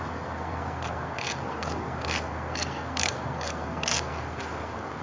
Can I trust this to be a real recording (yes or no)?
no